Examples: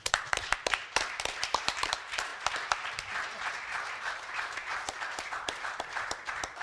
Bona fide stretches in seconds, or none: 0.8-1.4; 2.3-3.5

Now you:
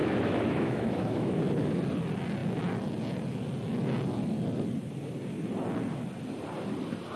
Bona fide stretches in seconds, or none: 1.4-7.2

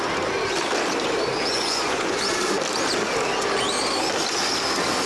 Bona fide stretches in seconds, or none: 0.0-1.3; 2.2-5.1